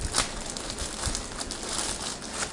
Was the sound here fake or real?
real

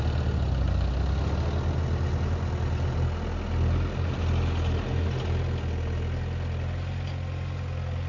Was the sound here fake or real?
real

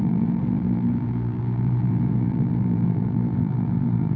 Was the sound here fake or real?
fake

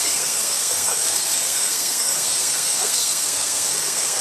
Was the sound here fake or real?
fake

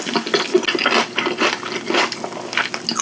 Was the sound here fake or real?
real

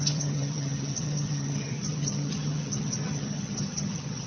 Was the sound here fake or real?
fake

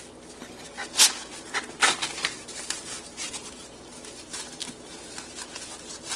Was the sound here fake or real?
real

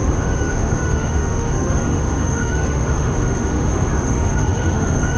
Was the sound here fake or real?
fake